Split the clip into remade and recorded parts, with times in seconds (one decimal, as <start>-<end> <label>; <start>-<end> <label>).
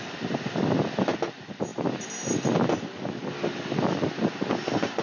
0.0-5.0 recorded